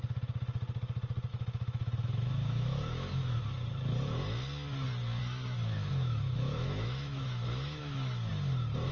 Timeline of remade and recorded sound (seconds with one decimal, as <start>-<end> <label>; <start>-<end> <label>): 0.0-1.3 recorded; 1.3-3.4 remade; 3.4-5.2 recorded; 5.2-8.3 remade; 8.3-8.9 recorded